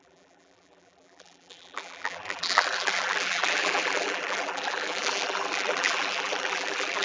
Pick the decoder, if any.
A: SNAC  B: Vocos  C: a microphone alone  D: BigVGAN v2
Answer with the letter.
D